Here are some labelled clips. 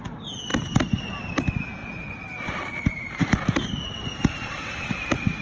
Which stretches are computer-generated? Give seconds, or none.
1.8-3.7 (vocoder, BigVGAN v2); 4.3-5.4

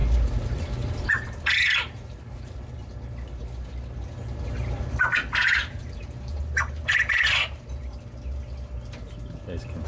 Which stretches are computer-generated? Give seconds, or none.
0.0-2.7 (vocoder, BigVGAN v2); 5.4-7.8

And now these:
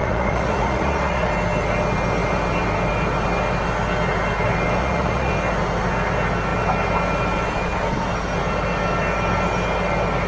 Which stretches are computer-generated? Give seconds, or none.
0.0-1.3 (vocoder, Vocos); 4.8-5.3